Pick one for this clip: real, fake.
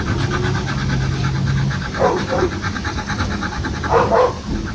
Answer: real